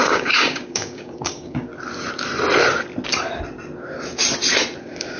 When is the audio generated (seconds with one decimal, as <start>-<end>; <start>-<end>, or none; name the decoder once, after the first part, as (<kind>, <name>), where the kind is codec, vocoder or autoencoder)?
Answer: 0.0-1.7 (codec, DAC); 4.8-5.2